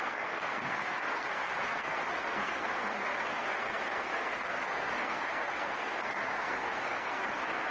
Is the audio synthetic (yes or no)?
yes